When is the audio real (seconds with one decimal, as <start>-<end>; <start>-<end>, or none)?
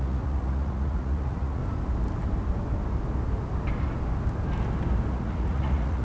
1.6-5.1